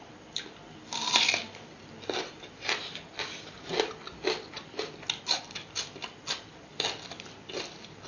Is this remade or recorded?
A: recorded